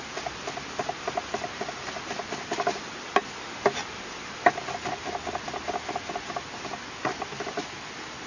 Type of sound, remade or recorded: recorded